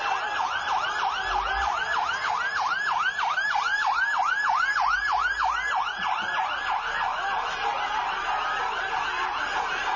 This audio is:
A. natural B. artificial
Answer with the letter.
A